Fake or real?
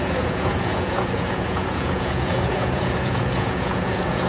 fake